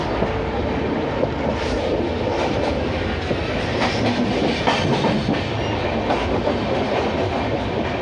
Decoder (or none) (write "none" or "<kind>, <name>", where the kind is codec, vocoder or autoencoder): none